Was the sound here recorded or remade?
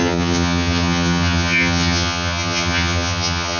remade